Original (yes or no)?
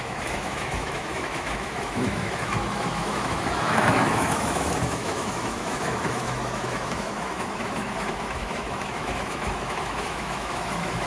no